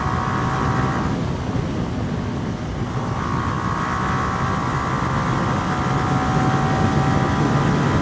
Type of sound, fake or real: real